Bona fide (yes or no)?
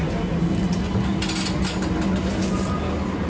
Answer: yes